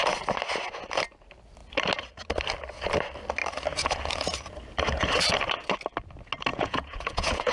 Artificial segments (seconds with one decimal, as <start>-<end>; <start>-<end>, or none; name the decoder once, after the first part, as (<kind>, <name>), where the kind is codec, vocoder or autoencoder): 6.5-7.5 (vocoder, Vocos)